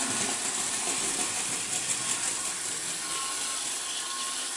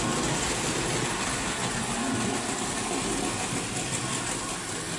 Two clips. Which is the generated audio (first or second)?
first